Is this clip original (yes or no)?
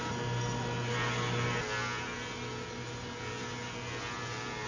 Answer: yes